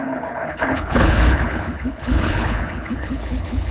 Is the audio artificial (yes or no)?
yes